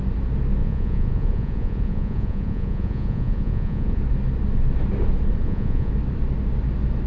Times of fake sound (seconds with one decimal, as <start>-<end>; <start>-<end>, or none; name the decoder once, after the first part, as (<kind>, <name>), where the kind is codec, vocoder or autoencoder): 0.6-4.0 (vocoder, Vocos); 5.4-5.9